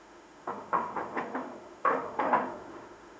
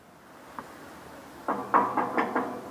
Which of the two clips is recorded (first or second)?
second